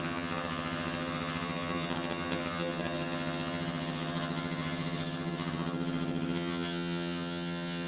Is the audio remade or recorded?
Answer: remade